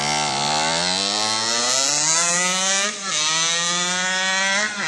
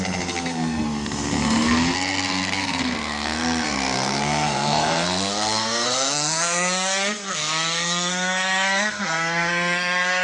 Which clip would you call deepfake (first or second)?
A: second